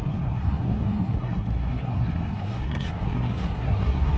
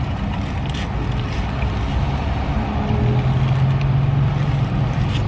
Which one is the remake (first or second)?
first